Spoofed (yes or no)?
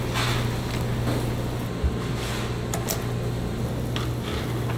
no